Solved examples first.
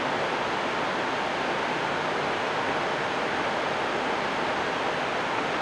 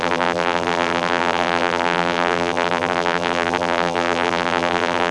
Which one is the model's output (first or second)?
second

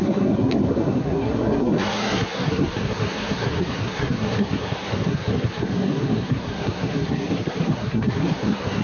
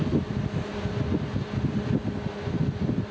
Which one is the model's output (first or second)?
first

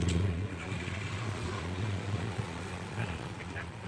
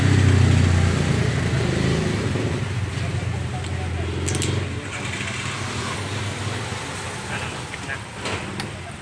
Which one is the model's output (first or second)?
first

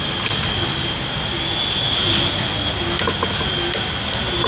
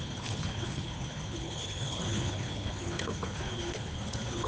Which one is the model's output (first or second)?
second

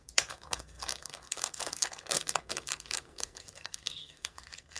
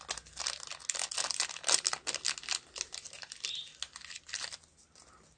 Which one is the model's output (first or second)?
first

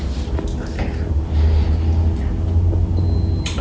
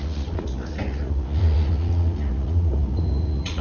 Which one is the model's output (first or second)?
second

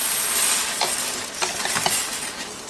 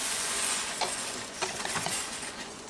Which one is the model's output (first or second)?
second